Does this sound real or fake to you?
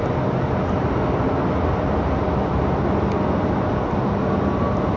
real